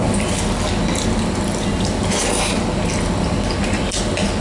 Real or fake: real